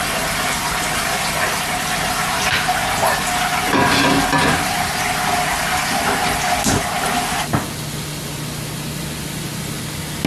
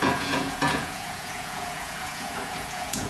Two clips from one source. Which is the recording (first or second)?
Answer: first